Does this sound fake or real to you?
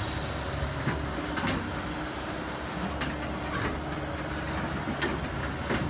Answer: real